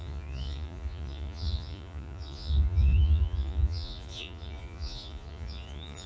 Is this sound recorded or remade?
remade